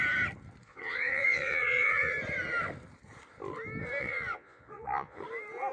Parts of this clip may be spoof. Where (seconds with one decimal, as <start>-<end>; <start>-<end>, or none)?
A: 0.6-2.1; 4.0-5.2